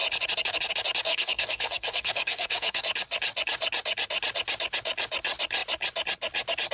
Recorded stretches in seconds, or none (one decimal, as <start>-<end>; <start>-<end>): 0.0-1.1; 2.8-6.7